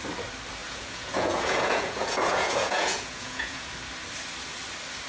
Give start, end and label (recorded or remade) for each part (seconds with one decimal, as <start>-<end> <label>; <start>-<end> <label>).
0.0-0.6 recorded; 0.6-3.7 remade; 3.7-5.1 recorded